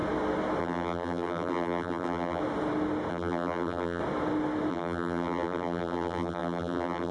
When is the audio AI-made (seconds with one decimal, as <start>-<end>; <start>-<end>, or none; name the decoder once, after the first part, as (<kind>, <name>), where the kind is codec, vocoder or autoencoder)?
0.6-2.4 (vocoder, BigVGAN v2); 3.1-4.0; 4.7-7.1